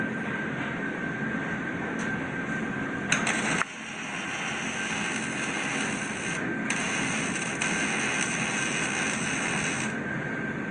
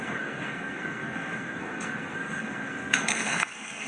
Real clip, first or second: first